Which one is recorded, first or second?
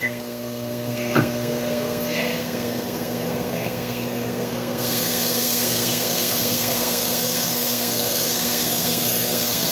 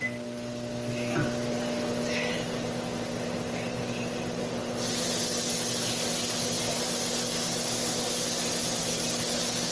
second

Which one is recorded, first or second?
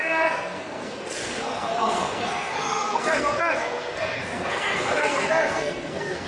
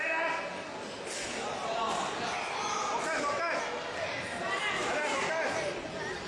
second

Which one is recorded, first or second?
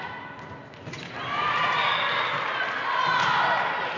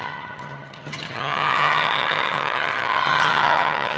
first